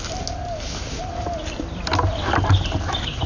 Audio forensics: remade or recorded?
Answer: recorded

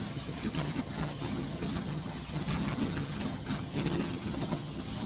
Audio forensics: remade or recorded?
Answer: remade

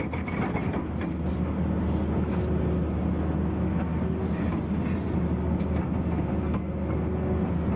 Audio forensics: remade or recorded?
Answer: recorded